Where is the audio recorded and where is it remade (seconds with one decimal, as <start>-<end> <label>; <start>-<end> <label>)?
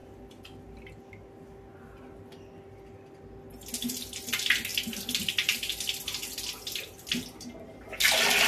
0.0-8.5 recorded